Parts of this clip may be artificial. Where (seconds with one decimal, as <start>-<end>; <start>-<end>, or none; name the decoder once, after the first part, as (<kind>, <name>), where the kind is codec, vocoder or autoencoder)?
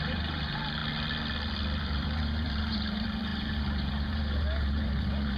0.0-0.8 (vocoder, BigVGAN v2); 1.8-5.4